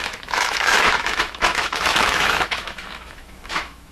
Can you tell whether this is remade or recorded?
remade